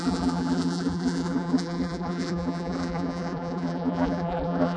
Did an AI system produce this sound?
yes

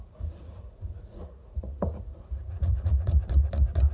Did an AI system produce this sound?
yes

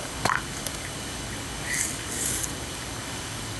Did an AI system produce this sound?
yes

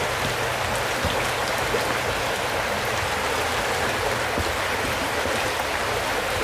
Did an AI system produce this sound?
no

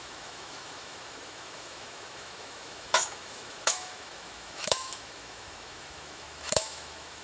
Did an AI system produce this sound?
yes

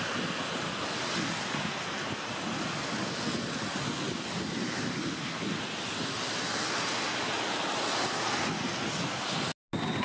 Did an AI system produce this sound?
no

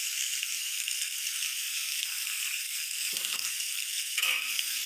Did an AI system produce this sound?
yes